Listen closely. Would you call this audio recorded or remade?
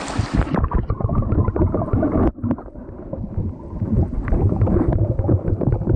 recorded